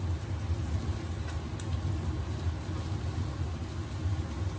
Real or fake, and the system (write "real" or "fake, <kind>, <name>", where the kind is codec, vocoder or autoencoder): real